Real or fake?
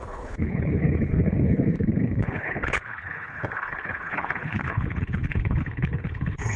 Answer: fake